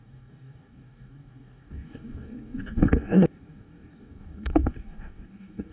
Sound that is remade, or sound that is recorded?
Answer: remade